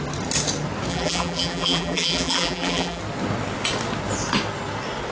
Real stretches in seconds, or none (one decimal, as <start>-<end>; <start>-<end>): 0.0-0.9; 3.0-5.1

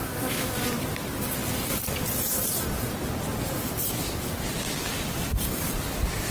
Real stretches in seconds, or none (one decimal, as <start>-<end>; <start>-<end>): 0.5-6.3

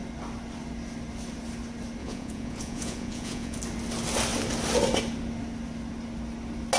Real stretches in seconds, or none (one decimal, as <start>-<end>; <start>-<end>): 0.0-2.0; 3.6-6.8